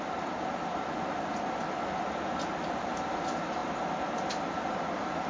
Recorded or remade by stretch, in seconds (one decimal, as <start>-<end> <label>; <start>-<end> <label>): 0.0-5.3 recorded